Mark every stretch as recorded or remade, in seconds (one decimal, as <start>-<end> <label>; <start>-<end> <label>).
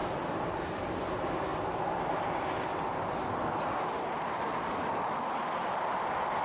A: 0.0-6.4 recorded